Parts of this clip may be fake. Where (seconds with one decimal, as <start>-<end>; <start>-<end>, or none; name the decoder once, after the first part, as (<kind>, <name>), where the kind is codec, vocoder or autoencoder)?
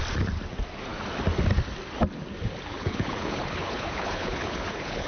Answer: 2.7-5.1 (codec, HILCodec)